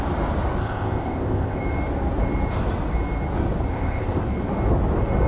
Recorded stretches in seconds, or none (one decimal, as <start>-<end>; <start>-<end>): 0.0-0.6; 1.6-3.7; 4.2-5.3